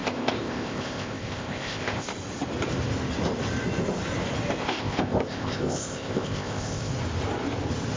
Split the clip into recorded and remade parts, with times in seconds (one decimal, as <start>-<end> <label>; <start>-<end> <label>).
0.0-2.1 remade; 2.1-4.6 recorded; 4.6-6.9 remade; 6.9-8.0 recorded